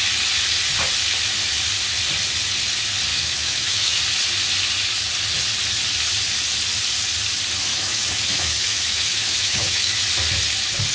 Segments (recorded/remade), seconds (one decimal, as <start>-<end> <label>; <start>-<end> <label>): 0.0-3.1 recorded; 3.1-4.0 remade; 4.0-7.7 recorded; 7.7-10.0 remade; 10.0-10.9 recorded